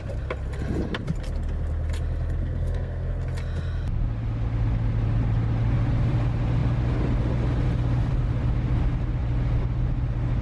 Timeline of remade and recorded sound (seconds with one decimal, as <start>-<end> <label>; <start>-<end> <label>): 0.0-2.4 recorded; 2.4-3.1 remade; 3.1-10.4 recorded